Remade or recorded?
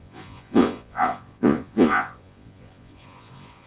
remade